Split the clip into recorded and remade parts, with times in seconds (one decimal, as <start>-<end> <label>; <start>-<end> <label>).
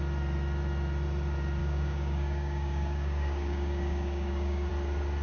0.0-1.6 recorded; 1.6-4.7 remade; 4.7-5.2 recorded